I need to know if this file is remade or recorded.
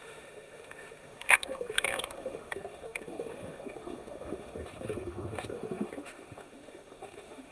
remade